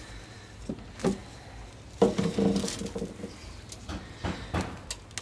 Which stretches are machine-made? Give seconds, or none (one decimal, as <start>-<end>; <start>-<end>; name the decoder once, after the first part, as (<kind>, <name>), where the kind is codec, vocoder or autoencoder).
none